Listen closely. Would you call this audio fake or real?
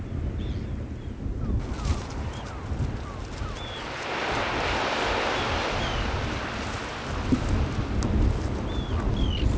real